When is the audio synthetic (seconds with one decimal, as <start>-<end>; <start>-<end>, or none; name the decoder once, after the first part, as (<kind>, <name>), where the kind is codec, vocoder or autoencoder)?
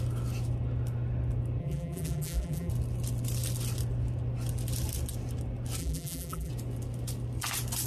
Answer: 1.6-2.7 (vocoder, BigVGAN v2); 5.8-6.5